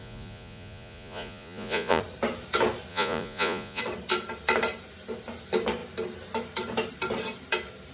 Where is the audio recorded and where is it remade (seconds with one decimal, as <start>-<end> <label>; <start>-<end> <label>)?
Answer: 0.0-2.0 remade; 2.0-2.9 recorded; 2.9-3.8 remade; 3.8-7.9 recorded